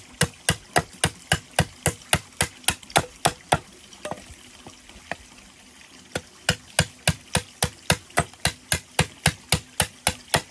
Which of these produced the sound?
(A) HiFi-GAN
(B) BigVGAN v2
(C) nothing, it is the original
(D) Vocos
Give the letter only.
C